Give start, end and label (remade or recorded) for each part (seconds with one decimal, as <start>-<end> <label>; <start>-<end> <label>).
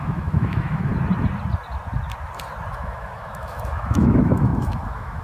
0.0-0.9 remade; 0.9-2.7 recorded; 2.7-5.2 remade